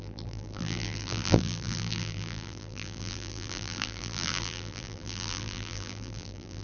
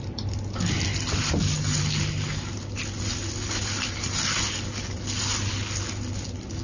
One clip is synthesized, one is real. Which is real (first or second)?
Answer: second